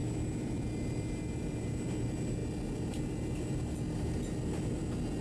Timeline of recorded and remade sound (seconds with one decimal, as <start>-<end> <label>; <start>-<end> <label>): 0.0-1.9 remade; 1.9-5.2 recorded